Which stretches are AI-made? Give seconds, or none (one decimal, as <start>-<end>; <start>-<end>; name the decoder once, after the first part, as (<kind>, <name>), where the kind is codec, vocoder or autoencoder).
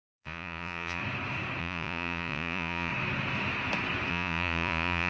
0.0-1.0 (vocoder, Vocos); 1.6-2.9; 4.1-5.1